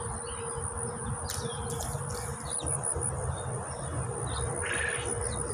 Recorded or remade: recorded